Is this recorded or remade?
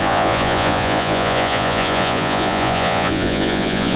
remade